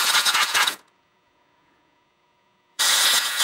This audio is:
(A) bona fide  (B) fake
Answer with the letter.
B